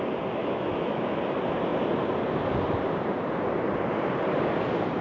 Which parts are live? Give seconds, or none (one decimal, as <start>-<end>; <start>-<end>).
0.0-0.4; 1.2-5.0